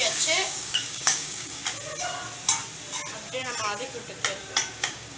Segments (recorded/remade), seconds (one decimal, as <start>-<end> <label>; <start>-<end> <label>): 0.0-1.6 remade; 1.6-4.7 recorded; 4.7-5.2 remade